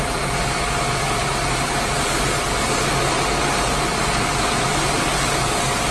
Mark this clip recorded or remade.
recorded